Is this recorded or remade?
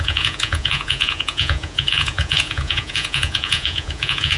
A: remade